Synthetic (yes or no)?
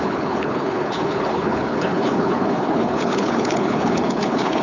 yes